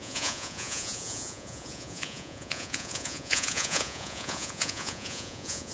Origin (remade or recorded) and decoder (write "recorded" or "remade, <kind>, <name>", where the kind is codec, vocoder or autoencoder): remade, vocoder, Vocos